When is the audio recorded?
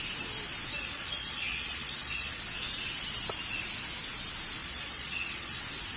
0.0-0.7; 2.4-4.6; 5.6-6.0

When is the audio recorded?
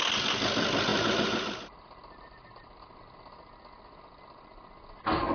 0.0-0.9; 3.0-5.3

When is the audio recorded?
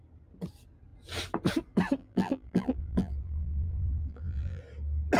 0.0-2.0; 4.6-5.2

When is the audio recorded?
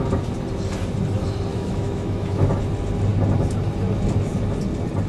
0.0-1.5; 2.5-5.1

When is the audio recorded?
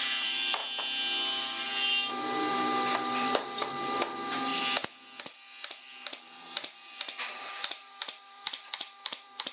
0.6-2.1; 4.5-6.2